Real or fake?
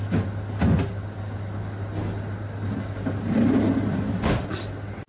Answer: real